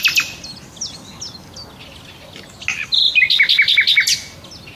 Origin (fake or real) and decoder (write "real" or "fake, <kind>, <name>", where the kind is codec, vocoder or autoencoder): real